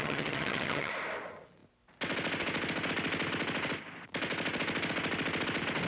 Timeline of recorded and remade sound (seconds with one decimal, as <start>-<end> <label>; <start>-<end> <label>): 0.0-0.9 remade; 0.9-5.9 recorded